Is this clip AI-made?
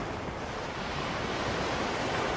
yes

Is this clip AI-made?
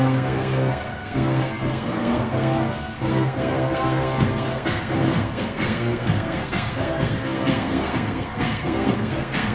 yes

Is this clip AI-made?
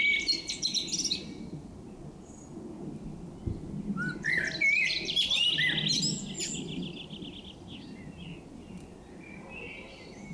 no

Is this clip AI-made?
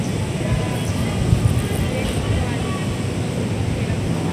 no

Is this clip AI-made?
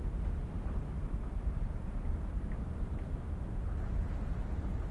no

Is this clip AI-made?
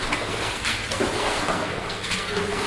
yes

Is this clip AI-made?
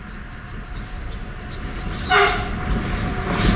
no